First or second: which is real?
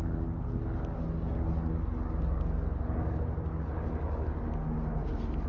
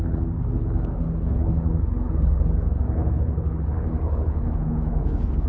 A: first